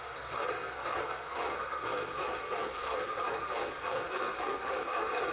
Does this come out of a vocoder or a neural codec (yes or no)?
yes